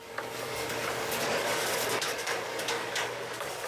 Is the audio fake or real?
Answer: fake